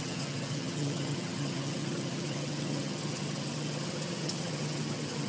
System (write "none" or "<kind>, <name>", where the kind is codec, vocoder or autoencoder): vocoder, HiFi-GAN